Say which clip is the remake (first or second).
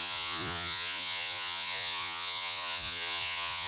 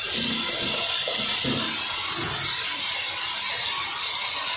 first